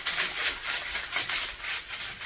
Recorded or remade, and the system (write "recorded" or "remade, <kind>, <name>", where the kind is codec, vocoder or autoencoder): recorded